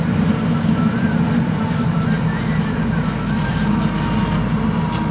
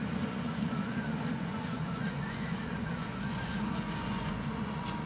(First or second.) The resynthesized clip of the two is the second